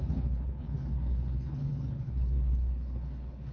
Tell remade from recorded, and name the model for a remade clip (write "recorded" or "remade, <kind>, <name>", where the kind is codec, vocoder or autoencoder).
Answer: remade, codec, HILCodec